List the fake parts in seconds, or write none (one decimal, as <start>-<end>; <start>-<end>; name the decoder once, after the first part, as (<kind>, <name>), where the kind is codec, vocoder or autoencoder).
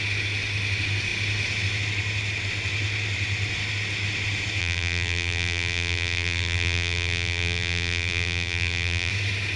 4.6-9.1 (vocoder, BigVGAN v2)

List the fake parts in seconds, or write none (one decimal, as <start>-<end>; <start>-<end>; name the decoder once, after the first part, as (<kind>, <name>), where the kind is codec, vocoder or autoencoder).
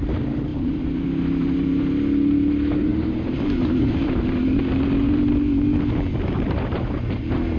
0.5-1.9 (vocoder, BigVGAN v2); 2.9-4.4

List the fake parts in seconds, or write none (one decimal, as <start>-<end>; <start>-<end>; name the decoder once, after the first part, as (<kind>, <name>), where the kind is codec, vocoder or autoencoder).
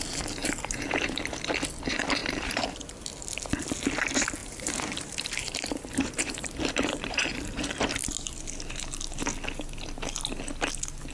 0.4-1.2 (vocoder, BigVGAN v2); 2.2-3.1; 4.4-7.9